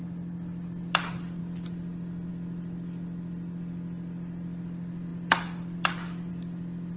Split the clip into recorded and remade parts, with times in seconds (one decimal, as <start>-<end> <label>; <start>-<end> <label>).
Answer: 0.0-7.0 recorded